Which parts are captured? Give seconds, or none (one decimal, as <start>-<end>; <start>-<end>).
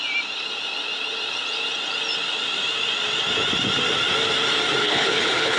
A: 0.0-4.8